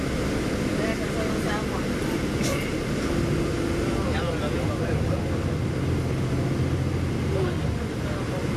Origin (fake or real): real